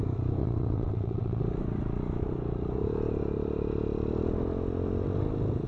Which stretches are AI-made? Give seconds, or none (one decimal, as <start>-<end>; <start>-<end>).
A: 0.4-1.4